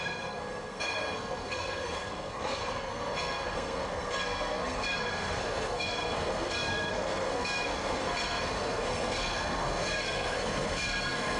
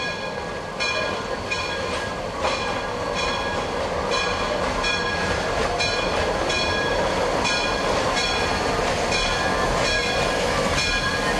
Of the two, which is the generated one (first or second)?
first